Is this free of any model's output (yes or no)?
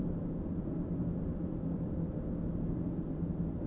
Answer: yes